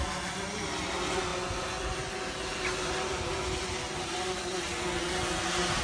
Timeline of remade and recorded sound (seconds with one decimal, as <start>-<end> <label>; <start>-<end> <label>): 0.0-5.8 recorded